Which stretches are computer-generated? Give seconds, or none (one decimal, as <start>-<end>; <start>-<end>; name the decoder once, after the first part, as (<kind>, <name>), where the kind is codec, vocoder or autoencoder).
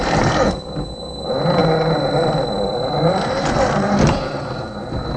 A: none